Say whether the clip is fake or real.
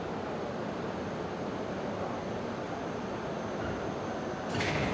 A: real